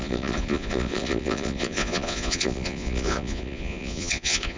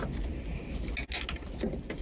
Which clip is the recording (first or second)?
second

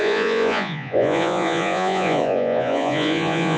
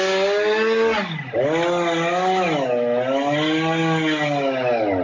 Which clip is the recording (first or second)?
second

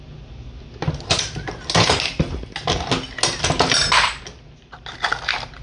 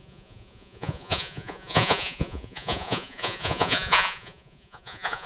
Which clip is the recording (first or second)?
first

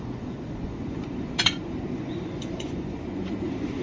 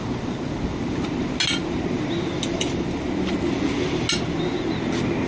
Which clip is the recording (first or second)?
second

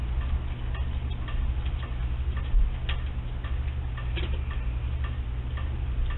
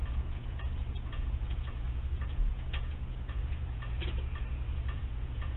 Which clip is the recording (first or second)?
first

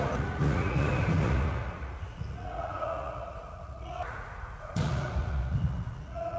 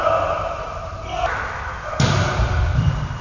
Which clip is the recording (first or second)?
second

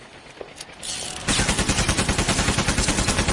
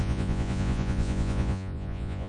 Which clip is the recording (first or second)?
first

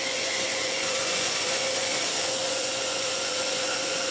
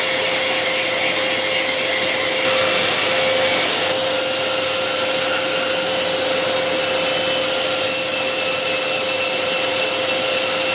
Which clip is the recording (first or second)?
second